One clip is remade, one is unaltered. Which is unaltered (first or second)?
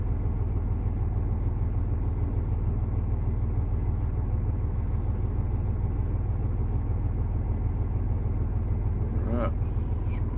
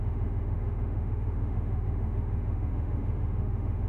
first